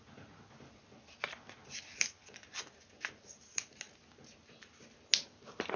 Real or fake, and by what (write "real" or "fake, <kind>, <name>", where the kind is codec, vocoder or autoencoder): real